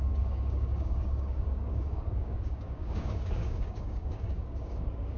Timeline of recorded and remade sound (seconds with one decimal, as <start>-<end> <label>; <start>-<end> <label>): 0.0-5.2 remade